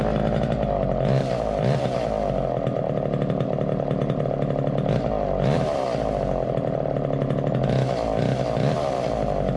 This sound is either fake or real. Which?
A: real